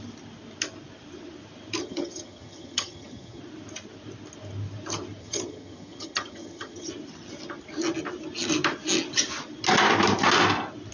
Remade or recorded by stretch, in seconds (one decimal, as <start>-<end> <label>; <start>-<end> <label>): 0.0-1.8 recorded; 1.8-3.4 remade; 3.4-5.2 recorded; 5.2-6.9 remade; 6.9-10.9 recorded